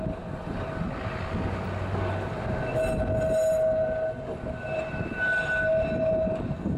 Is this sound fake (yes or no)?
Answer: no